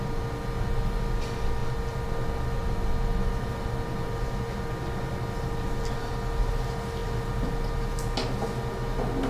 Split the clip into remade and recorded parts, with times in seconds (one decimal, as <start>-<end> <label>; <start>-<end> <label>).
0.0-9.3 recorded